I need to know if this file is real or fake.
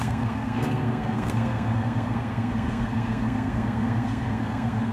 fake